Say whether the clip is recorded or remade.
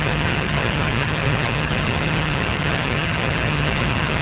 remade